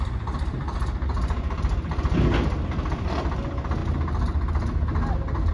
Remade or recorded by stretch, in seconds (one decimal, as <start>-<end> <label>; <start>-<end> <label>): 0.0-5.5 recorded